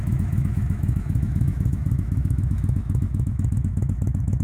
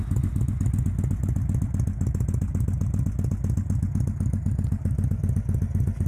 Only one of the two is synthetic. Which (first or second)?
first